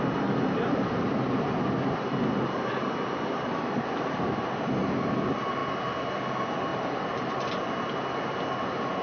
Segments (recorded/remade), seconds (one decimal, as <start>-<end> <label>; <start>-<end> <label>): 0.0-6.7 recorded; 6.7-7.5 remade; 7.5-9.0 recorded